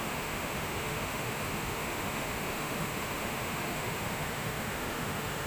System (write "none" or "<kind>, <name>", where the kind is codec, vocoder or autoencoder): autoencoder, DAC-VAE